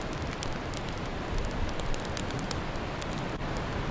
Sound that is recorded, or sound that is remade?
recorded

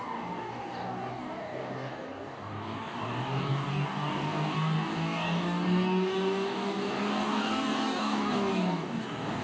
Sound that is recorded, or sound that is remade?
remade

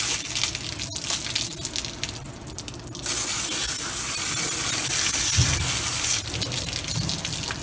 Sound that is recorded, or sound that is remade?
recorded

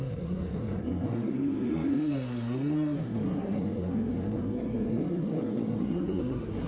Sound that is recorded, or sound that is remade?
remade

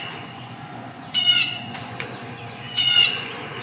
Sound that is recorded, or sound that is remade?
remade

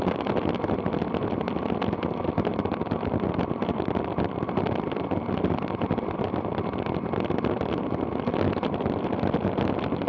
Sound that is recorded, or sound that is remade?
recorded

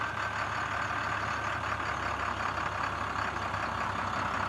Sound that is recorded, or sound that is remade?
recorded